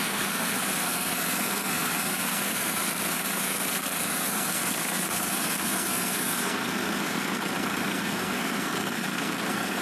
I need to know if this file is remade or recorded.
remade